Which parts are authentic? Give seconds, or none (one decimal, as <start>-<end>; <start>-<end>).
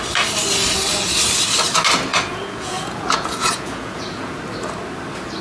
0.0-2.1; 4.4-5.4